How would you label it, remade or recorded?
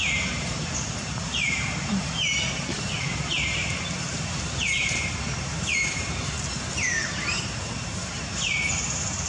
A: remade